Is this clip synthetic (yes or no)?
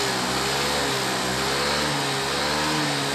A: no